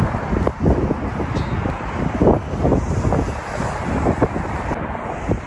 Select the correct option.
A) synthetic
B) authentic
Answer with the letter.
B